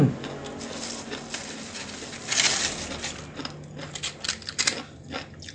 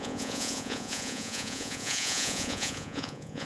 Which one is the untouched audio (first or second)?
first